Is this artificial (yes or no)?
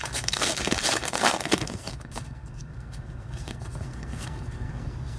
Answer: yes